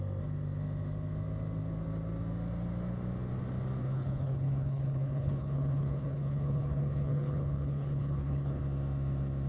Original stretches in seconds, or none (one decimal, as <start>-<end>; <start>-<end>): 0.0-3.8; 8.6-9.5